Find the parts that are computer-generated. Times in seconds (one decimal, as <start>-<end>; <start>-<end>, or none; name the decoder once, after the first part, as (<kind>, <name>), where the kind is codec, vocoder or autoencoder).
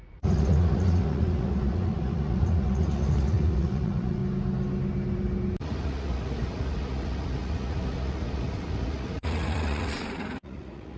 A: 0.0-4.2 (vocoder, Vocos); 5.6-11.0